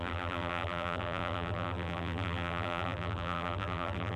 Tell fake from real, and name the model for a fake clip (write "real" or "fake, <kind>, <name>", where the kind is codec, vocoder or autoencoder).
fake, vocoder, BigVGAN v2